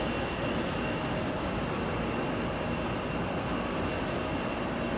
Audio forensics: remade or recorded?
recorded